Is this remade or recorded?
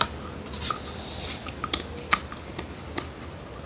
recorded